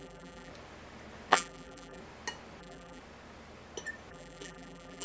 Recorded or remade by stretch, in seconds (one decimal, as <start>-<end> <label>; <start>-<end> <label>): 0.0-0.5 remade; 0.5-1.3 recorded; 1.3-2.0 remade; 2.0-2.6 recorded; 2.6-3.0 remade; 3.0-4.1 recorded; 4.1-5.0 remade